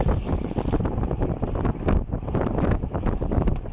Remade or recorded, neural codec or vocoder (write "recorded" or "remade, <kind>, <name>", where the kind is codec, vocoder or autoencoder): remade, vocoder, BigVGAN v2